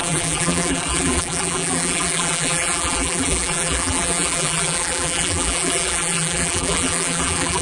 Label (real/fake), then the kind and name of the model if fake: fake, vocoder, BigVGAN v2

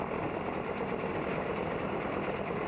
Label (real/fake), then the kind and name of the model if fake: real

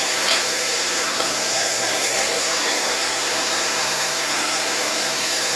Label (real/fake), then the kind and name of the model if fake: fake, codec, SNAC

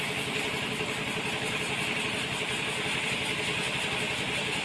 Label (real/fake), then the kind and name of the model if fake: real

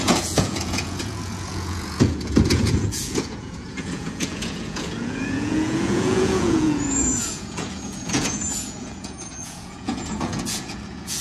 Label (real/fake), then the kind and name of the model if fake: fake, vocoder, Vocos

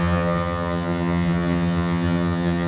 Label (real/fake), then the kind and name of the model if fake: fake, vocoder, HiFi-GAN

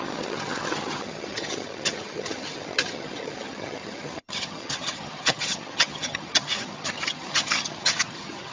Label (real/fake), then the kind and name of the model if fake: fake, vocoder, HiFi-GAN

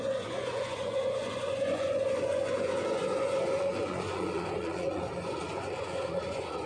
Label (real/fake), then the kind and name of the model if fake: fake, vocoder, Vocos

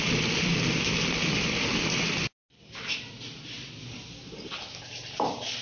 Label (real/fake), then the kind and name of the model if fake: real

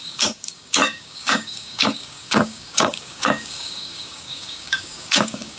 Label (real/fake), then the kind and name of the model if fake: fake, codec, DAC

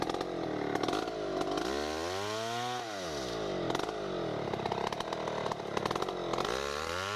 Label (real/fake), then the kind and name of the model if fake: real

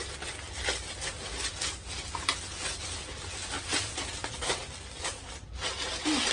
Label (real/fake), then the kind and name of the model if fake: real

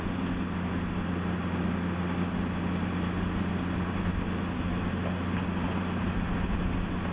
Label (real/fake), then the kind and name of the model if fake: real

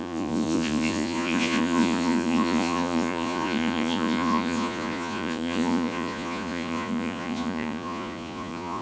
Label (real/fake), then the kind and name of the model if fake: fake, vocoder, Vocos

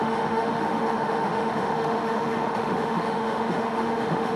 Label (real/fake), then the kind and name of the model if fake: fake, autoencoder, DAC-VAE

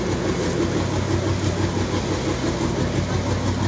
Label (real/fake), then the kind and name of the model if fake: real